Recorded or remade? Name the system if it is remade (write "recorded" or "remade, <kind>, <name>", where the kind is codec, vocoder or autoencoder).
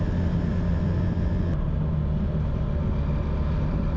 recorded